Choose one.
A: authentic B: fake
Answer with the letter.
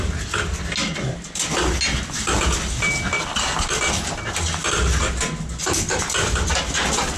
A